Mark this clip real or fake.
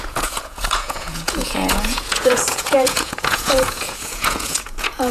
fake